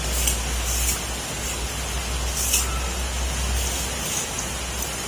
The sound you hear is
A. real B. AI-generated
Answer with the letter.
A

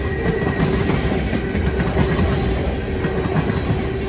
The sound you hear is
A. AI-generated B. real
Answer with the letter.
B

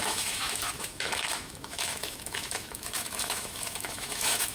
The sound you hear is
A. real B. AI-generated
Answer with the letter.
B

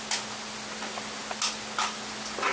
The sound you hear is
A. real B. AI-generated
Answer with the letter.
A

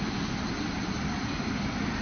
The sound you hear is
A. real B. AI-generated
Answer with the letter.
A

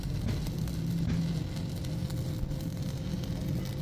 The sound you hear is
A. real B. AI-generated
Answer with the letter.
A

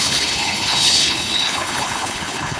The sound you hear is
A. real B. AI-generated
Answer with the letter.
B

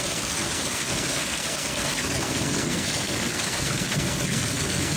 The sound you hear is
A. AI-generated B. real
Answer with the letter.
A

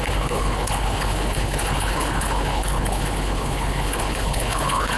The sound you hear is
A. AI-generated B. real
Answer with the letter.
A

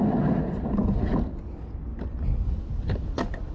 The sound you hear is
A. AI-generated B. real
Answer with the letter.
B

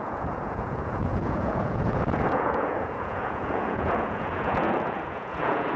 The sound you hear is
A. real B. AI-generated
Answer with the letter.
B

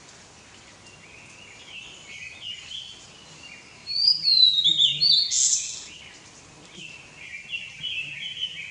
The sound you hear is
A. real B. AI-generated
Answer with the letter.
A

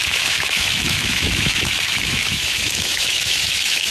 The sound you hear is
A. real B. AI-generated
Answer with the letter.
B